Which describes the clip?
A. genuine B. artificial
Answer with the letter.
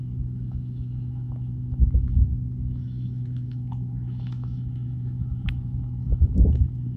B